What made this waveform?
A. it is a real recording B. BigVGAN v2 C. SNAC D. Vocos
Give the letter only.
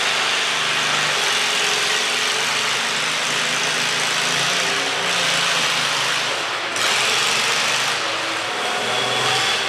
A